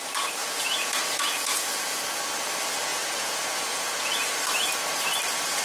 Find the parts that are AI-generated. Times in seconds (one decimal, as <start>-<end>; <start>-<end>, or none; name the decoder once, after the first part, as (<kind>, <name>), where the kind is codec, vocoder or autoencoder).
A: 0.4-2.0 (vocoder, Vocos); 2.9-4.3